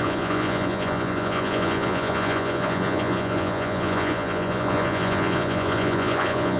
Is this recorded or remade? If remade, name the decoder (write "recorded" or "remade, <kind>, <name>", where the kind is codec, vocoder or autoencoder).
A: remade, vocoder, Vocos